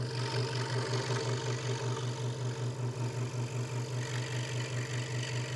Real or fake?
real